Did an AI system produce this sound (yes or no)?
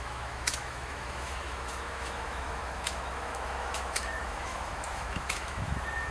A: yes